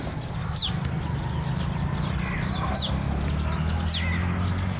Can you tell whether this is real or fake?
real